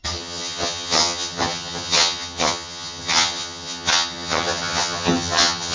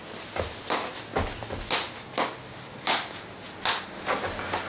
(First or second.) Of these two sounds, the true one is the second